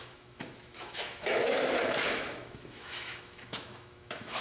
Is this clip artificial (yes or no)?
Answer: yes